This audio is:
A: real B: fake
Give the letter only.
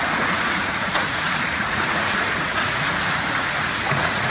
B